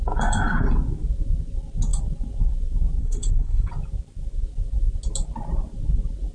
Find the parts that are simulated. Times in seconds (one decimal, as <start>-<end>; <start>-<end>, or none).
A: 3.0-3.7